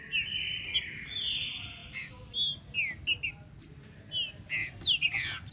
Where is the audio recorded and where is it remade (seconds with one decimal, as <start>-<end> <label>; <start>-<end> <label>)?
0.0-1.8 recorded; 1.8-2.3 remade; 2.3-4.6 recorded; 4.6-5.5 remade